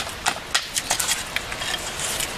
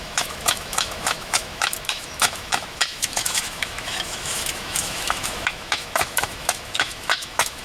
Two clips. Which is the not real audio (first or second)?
second